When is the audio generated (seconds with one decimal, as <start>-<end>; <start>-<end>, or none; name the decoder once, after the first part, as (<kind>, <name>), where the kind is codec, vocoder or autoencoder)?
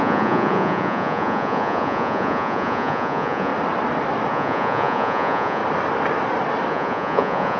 0.0-3.5 (vocoder, Vocos); 4.3-5.6; 6.7-7.6